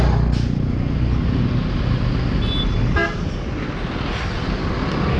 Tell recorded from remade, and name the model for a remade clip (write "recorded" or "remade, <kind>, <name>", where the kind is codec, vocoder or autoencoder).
recorded